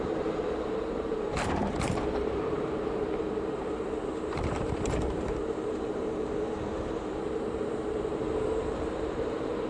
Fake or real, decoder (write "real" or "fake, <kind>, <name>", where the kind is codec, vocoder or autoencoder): fake, vocoder, BigVGAN v2